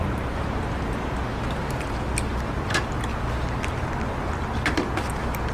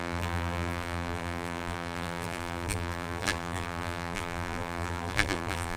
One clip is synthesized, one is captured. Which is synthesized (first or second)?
second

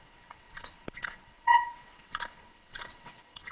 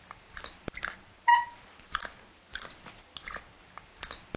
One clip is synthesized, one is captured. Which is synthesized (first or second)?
first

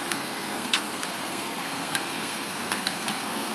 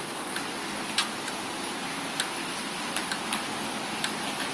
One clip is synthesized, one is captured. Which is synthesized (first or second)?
first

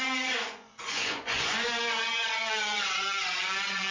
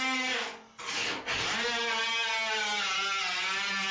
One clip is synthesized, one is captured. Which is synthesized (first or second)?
first